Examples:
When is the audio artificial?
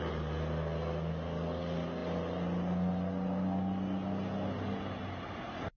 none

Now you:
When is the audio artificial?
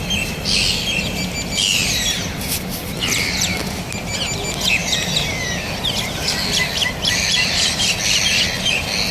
1.7-3.6 (vocoder, BigVGAN v2); 4.8-5.8; 6.8-7.5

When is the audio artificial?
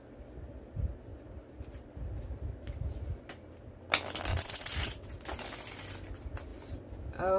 4.3-5.1 (vocoder, WaveNeXt)